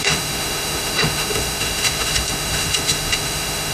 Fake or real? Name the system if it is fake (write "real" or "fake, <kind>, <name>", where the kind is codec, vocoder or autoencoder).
fake, autoencoder, DAC-VAE